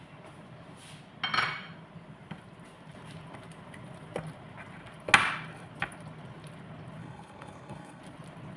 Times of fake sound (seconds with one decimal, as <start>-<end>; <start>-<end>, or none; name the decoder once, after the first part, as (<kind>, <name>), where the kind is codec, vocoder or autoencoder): 7.0-8.0 (codec, SNAC)